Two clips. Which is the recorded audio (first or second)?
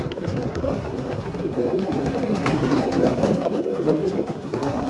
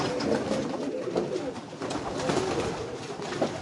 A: second